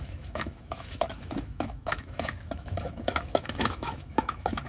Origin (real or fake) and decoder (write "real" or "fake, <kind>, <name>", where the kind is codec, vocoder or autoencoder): fake, autoencoder, DAC-VAE